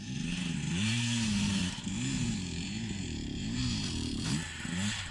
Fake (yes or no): yes